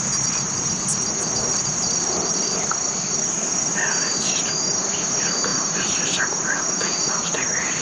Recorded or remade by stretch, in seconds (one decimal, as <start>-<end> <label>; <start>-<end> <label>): 0.0-7.8 recorded